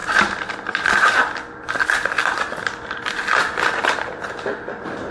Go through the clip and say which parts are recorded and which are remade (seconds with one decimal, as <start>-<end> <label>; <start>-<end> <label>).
0.0-5.1 recorded